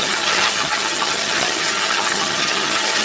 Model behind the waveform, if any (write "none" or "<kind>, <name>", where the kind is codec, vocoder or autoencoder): vocoder, HiFi-GAN